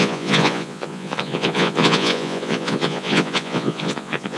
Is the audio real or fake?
fake